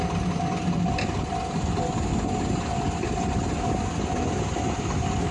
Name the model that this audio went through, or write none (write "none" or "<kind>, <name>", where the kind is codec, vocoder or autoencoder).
none